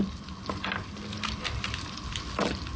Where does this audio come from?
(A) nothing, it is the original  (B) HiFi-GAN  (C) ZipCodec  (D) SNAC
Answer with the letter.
A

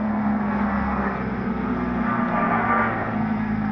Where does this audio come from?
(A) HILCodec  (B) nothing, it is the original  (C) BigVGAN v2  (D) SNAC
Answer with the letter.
D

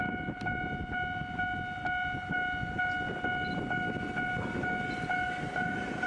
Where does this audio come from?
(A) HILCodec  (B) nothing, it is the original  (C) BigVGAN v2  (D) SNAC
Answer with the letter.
B